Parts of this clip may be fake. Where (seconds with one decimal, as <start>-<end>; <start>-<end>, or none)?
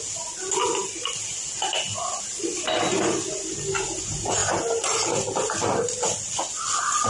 none